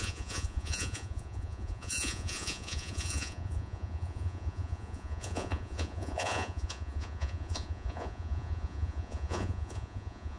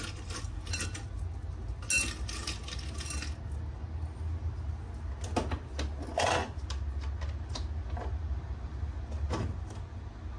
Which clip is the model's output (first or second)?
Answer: first